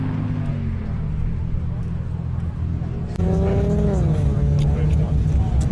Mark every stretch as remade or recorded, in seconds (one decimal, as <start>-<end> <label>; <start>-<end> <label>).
0.0-5.7 recorded